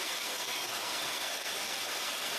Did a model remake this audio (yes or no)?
yes